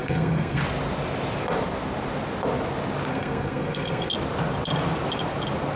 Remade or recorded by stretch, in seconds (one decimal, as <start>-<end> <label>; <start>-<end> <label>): 0.0-0.6 remade; 0.6-3.1 recorded; 3.1-4.1 remade; 4.1-5.8 recorded